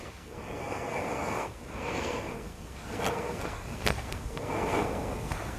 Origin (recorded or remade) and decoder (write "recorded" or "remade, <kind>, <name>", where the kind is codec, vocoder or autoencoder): remade, codec, SNAC